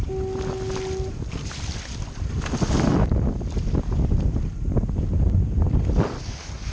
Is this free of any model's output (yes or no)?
yes